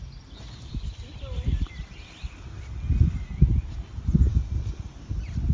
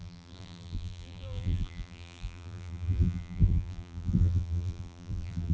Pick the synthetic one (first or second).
second